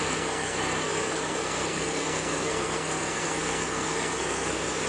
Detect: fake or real fake